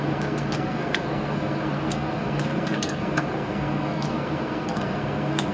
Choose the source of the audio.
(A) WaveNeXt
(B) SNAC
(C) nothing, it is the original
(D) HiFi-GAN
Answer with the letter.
B